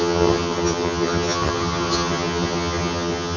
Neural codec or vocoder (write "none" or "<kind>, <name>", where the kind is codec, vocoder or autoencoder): vocoder, HiFi-GAN